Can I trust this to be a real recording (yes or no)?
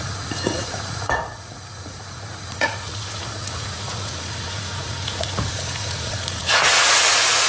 no